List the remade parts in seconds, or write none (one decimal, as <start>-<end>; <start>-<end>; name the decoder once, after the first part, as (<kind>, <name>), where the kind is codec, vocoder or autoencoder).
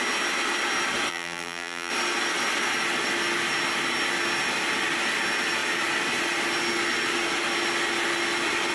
1.1-1.9 (vocoder, BigVGAN v2)